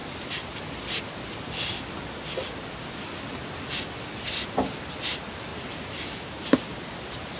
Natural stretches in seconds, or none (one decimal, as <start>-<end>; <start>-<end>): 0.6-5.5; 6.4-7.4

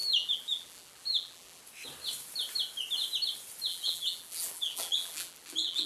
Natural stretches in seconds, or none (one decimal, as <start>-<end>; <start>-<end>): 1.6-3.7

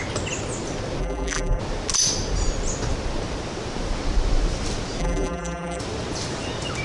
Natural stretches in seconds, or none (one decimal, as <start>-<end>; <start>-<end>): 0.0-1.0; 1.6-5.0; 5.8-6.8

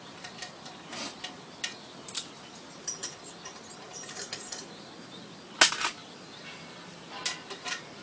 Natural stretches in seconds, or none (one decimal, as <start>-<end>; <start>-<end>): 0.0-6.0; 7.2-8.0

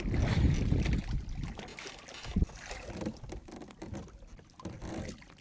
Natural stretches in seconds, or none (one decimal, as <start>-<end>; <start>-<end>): 0.0-5.4

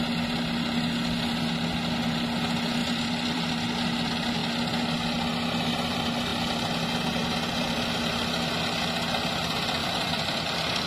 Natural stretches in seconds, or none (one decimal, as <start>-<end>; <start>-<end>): 0.0-2.8; 3.5-9.8

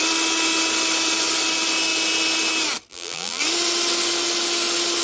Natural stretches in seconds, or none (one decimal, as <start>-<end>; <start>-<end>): 0.0-2.9; 3.4-5.0

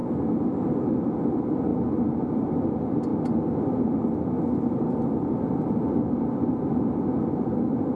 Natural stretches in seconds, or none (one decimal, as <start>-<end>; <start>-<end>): 0.0-8.0